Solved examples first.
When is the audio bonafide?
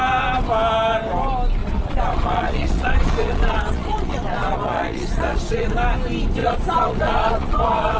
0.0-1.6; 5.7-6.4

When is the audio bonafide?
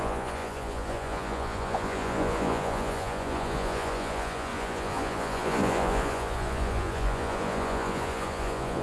none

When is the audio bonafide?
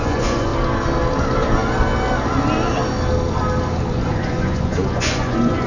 0.5-3.9